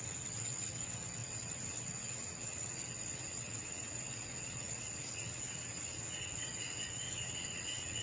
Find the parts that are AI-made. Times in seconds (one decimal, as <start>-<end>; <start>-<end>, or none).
0.0-8.0